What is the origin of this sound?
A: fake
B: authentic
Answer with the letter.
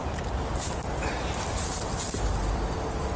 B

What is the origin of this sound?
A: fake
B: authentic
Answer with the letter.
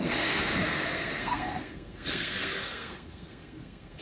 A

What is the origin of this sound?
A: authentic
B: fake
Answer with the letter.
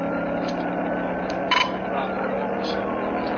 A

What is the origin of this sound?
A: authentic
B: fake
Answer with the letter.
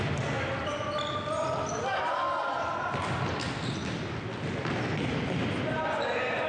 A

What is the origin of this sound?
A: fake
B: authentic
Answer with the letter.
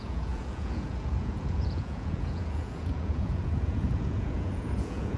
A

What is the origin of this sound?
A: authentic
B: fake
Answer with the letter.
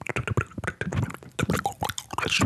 A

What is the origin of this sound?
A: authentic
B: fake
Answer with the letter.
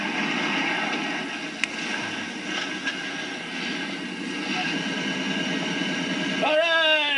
A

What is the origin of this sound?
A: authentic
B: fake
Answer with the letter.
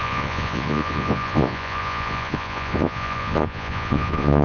B